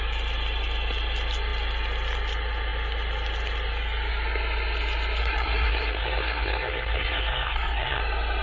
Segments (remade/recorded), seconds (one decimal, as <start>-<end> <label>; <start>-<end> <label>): 0.0-5.2 recorded; 5.2-8.0 remade; 8.0-8.4 recorded